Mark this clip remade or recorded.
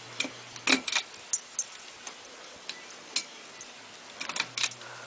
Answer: recorded